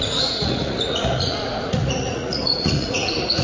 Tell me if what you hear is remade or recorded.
remade